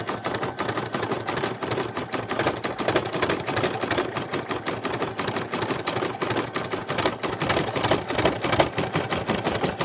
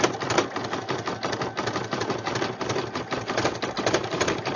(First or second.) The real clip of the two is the second